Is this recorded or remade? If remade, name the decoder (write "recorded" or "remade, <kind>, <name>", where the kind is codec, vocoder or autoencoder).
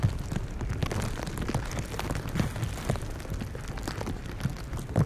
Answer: recorded